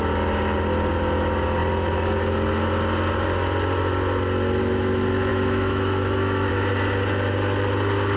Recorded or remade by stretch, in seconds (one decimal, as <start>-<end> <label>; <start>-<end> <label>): 0.0-5.3 recorded; 5.3-6.5 remade; 6.5-8.2 recorded